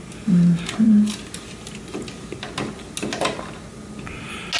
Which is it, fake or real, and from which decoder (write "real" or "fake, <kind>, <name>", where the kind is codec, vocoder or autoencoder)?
real